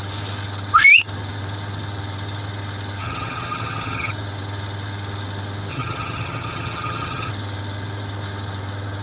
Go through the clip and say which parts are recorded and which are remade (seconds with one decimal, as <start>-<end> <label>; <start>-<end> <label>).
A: 0.0-3.0 recorded; 3.0-4.1 remade; 4.1-5.7 recorded; 5.7-7.3 remade; 7.3-9.0 recorded